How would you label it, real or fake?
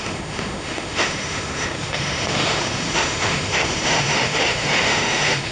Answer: fake